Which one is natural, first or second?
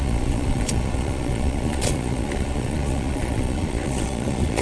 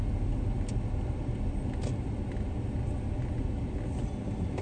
second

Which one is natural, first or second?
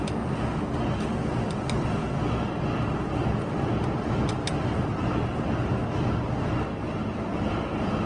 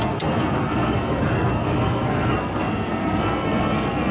first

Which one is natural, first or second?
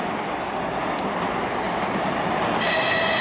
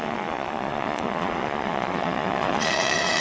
first